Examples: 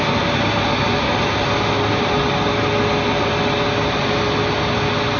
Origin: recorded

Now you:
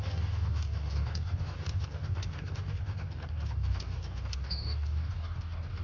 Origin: remade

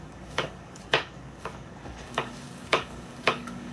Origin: remade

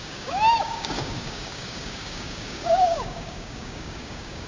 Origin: remade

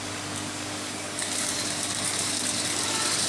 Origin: remade